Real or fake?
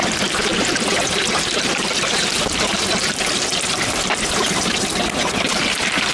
real